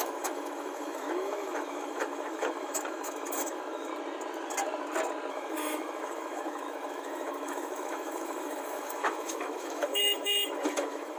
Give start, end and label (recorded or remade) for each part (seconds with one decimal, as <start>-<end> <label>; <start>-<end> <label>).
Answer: 0.0-3.9 remade; 3.9-5.3 recorded; 5.3-11.2 remade

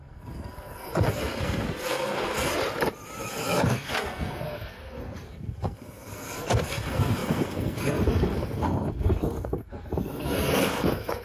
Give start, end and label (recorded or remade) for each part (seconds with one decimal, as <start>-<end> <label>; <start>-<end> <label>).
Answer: 0.0-2.5 remade; 2.5-3.2 recorded; 3.2-11.2 remade

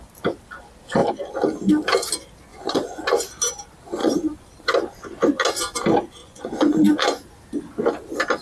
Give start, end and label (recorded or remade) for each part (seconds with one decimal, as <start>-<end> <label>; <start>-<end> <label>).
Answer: 0.0-2.5 recorded; 2.5-3.0 remade; 3.0-4.0 recorded; 4.0-4.5 remade; 4.5-6.2 recorded; 6.2-7.3 remade; 7.3-8.4 recorded

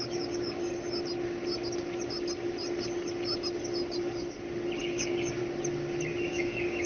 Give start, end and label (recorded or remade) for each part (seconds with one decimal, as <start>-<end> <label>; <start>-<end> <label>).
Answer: 0.0-0.7 remade; 0.7-4.8 recorded; 4.8-5.4 remade; 5.4-6.3 recorded; 6.3-6.9 remade

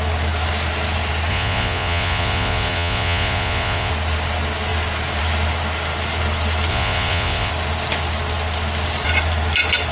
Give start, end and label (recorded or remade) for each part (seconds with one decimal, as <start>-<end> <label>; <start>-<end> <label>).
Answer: 0.0-1.3 recorded; 1.3-3.9 remade; 3.9-6.7 recorded; 6.7-7.5 remade; 7.5-9.9 recorded